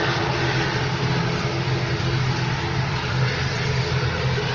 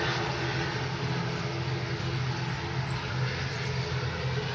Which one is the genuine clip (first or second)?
second